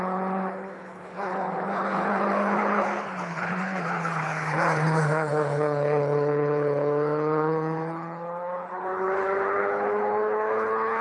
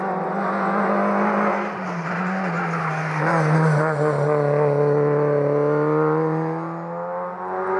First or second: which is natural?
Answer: second